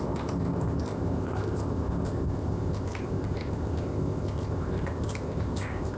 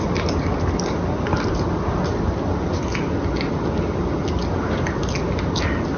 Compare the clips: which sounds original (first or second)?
second